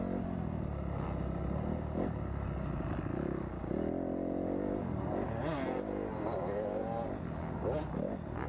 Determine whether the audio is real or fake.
real